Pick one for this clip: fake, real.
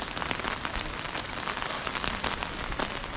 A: real